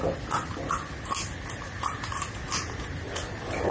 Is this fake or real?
real